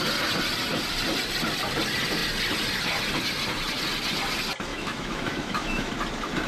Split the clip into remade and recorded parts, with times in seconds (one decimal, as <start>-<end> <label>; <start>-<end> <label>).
0.0-4.7 recorded; 4.7-5.9 remade; 5.9-6.5 recorded